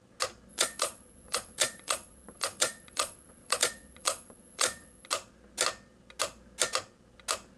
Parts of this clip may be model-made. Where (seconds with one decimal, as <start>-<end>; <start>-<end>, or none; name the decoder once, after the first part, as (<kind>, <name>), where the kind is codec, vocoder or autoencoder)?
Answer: 0.5-5.1 (vocoder, Vocos)